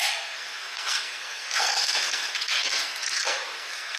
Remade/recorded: remade